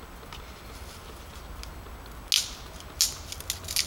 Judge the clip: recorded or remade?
recorded